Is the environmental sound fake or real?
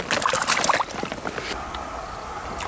real